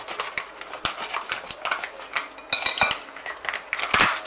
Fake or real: real